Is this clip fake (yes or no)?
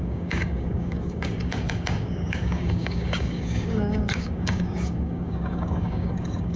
yes